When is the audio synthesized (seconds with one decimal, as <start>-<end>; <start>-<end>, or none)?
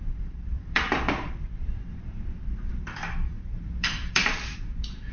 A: 0.0-5.1